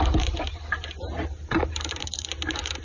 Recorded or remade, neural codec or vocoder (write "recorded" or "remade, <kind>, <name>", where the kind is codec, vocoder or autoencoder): remade, vocoder, BigVGAN v2